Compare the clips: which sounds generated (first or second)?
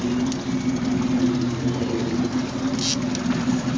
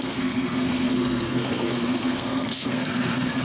second